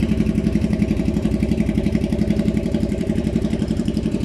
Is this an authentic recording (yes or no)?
no